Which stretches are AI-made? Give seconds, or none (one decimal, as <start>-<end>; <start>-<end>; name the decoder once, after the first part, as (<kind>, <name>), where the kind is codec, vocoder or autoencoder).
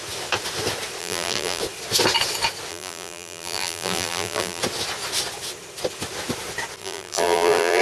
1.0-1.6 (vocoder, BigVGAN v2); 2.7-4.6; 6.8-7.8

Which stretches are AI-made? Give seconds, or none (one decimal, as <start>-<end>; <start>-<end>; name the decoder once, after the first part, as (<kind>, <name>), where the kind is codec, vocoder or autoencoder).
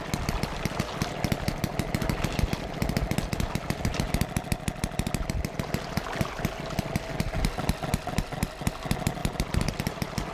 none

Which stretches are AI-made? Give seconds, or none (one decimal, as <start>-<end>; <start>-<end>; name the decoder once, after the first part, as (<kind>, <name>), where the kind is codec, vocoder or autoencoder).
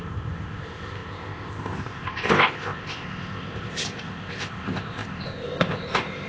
0.0-6.3 (codec, ZipCodec)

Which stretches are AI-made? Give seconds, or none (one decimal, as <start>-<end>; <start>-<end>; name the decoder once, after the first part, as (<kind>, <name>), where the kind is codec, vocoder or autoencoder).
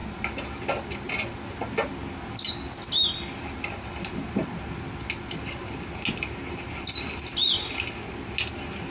none